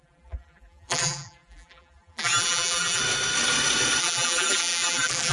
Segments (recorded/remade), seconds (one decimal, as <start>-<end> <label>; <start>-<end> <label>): 0.0-3.0 remade; 3.0-4.0 recorded; 4.0-5.3 remade